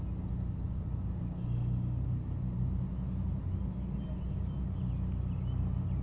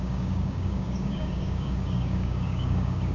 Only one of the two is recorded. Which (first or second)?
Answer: first